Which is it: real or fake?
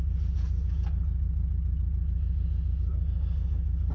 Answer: real